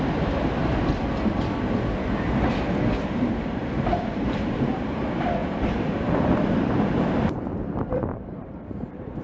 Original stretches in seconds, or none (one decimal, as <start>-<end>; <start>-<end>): 0.0-3.6; 5.0-5.4; 6.5-7.5